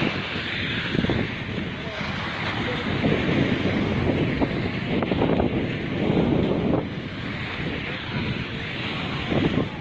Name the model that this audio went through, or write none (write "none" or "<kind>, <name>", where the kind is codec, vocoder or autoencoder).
none